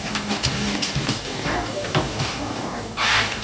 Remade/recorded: remade